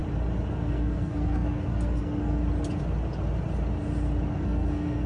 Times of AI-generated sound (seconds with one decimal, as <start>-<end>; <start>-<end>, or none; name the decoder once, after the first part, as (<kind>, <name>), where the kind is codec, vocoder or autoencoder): 0.5-2.4 (codec, SNAC); 4.3-5.1